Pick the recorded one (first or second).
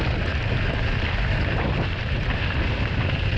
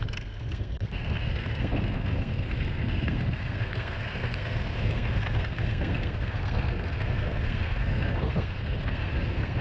first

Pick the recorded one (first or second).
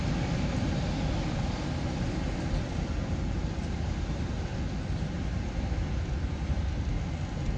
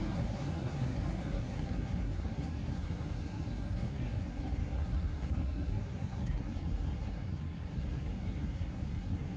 first